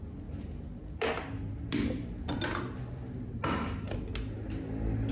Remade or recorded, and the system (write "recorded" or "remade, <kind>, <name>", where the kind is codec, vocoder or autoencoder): recorded